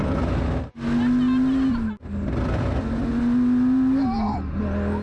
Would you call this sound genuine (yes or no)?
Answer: yes